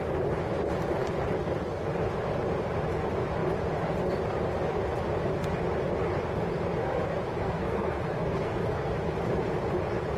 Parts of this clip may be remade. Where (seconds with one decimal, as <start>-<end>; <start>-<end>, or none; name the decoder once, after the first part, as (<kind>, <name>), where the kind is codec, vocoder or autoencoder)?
7.4-8.9 (codec, SNAC)